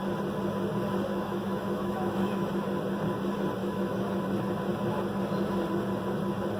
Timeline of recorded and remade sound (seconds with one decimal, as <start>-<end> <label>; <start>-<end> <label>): 0.0-1.1 recorded; 1.1-2.5 remade; 2.5-3.6 recorded; 3.6-4.1 remade; 4.1-6.6 recorded